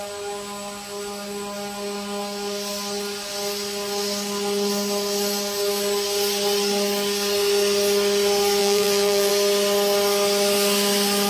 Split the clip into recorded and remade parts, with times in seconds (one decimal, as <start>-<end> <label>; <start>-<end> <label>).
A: 0.0-8.6 recorded; 8.6-9.3 remade; 9.3-11.3 recorded